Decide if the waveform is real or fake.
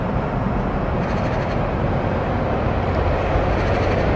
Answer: real